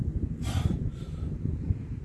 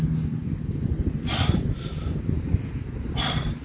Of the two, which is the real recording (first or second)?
first